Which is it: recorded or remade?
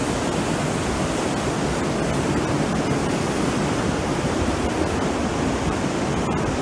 recorded